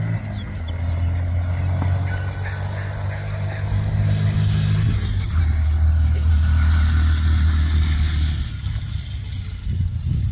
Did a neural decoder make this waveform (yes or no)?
no